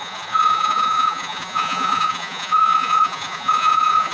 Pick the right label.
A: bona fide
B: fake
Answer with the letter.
B